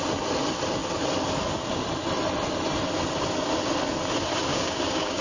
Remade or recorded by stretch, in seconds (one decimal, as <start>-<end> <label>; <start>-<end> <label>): 0.0-4.5 recorded; 4.5-5.2 remade

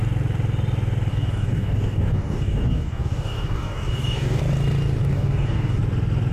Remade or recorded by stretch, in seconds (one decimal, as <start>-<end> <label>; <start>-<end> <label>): 0.0-1.1 recorded; 1.1-4.4 remade; 4.4-5.0 recorded; 5.0-5.8 remade; 5.8-6.3 recorded

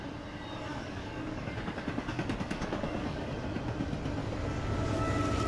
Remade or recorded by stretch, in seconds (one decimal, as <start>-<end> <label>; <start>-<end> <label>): 0.0-0.7 recorded; 0.7-3.3 remade; 3.3-4.2 recorded; 4.2-5.1 remade; 5.1-5.5 recorded

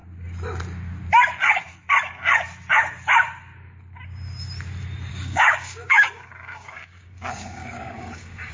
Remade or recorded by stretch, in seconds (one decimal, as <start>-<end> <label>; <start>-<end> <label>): 0.0-5.1 recorded; 5.1-8.5 remade